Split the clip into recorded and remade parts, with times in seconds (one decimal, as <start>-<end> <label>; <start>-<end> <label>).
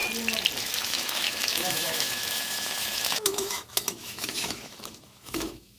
0.0-0.6 recorded; 0.6-5.8 remade